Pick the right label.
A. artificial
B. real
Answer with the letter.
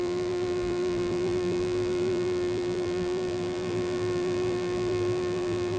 A